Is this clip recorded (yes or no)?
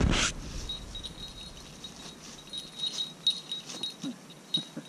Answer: yes